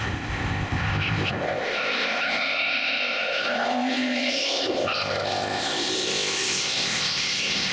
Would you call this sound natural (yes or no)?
no